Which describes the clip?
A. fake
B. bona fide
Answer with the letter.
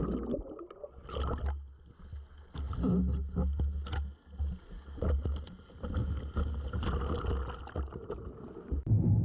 B